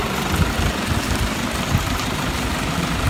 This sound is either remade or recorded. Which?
recorded